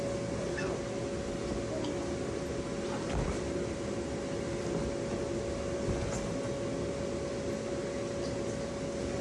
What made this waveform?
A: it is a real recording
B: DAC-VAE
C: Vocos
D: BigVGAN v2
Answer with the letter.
A